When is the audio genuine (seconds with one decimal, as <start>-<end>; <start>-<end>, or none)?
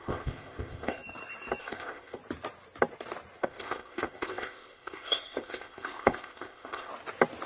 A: 1.0-1.6; 2.2-3.4; 6.9-7.5